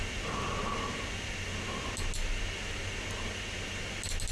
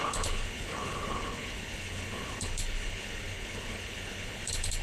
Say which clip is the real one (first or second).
first